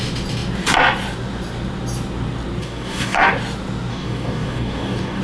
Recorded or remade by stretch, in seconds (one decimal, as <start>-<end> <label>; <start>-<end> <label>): 0.0-2.6 recorded; 2.6-3.3 remade; 3.3-3.9 recorded; 3.9-5.2 remade